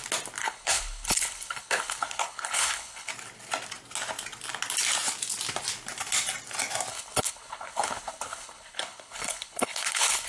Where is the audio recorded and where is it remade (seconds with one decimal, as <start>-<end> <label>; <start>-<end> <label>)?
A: 0.0-0.4 recorded; 0.4-3.1 remade; 3.1-6.9 recorded; 6.9-10.3 remade